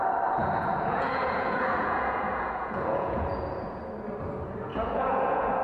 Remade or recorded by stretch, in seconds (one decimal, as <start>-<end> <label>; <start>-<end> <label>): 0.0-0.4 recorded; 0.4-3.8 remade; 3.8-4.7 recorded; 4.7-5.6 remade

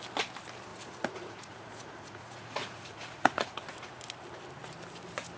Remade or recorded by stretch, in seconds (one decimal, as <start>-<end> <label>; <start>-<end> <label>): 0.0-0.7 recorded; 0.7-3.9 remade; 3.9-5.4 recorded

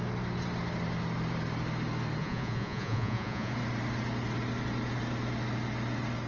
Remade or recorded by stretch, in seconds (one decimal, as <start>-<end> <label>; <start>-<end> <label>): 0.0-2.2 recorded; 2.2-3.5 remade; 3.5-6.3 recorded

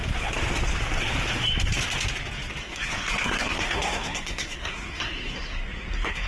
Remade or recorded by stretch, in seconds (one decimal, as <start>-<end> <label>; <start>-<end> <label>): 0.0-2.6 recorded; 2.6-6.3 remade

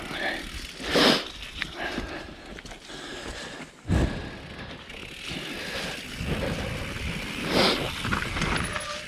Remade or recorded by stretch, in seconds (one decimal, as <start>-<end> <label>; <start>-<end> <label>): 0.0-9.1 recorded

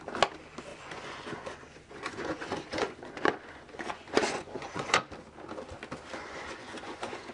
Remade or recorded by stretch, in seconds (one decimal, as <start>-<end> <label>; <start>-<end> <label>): 0.0-0.7 recorded; 0.7-5.1 remade; 5.1-6.2 recorded; 6.2-7.3 remade

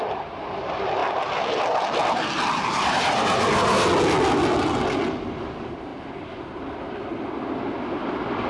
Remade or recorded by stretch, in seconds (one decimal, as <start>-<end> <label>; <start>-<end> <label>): 0.0-8.5 recorded

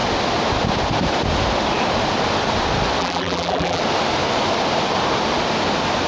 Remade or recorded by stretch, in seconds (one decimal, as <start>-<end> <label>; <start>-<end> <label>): 0.0-3.0 recorded; 3.0-3.8 remade; 3.8-6.1 recorded